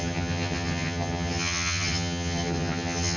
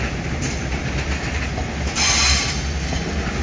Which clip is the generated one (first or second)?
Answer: first